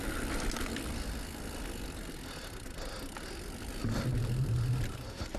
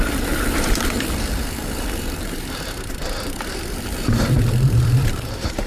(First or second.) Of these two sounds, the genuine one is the first